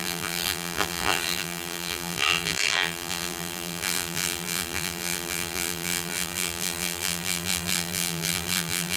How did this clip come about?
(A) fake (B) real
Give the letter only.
A